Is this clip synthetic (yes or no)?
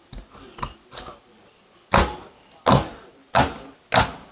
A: no